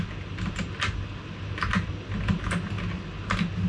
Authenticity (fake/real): real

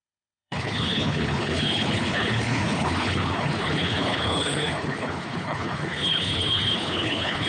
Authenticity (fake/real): fake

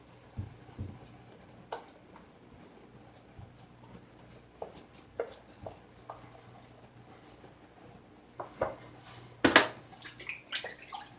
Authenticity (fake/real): real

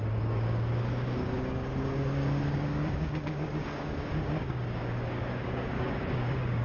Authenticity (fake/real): fake